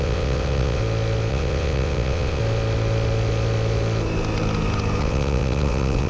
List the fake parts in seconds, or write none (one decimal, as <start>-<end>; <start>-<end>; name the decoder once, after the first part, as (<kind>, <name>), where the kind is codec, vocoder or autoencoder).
0.0-0.8 (vocoder, WaveNeXt); 1.3-2.4; 5.0-6.1